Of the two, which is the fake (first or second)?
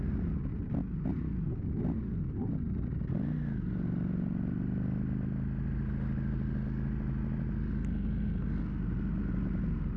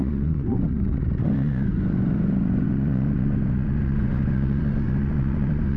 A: second